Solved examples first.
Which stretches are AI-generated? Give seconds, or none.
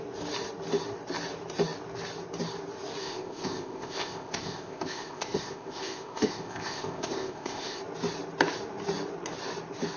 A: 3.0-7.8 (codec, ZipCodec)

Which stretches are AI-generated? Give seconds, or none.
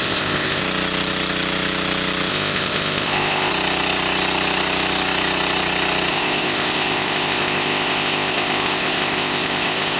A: 0.0-0.6 (codec, ZipCodec); 2.3-3.5; 6.1-10.0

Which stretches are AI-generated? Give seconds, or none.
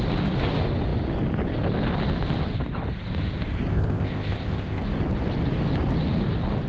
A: 3.7-4.8 (codec, ZipCodec)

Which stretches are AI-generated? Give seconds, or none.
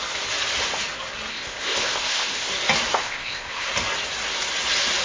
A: 1.3-2.5 (codec, ZipCodec); 3.0-3.7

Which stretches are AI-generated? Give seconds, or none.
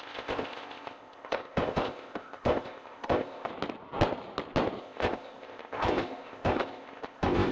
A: 0.0-3.5 (codec, ZipCodec); 4.8-7.5